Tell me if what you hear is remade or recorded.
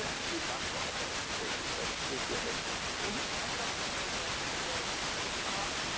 recorded